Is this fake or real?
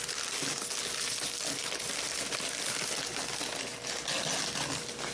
real